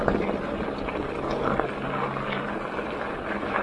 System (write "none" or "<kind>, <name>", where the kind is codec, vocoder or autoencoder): none